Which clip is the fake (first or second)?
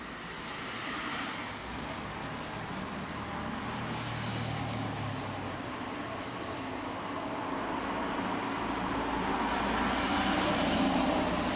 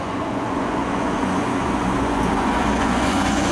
second